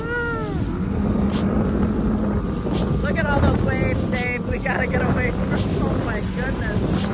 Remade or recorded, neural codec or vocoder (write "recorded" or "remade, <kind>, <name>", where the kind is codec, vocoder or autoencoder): recorded